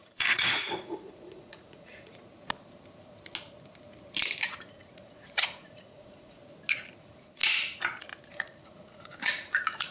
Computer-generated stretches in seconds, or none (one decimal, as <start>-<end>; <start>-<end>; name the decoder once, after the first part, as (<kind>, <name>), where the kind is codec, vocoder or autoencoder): 0.0-2.2 (vocoder, Vocos); 4.7-6.4; 7.0-7.4; 8.3-9.9